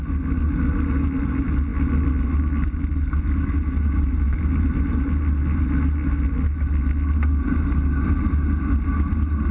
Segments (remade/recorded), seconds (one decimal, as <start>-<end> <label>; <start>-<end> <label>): 0.0-9.5 recorded